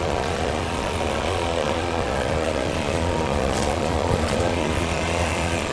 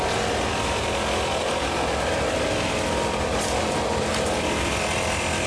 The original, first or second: second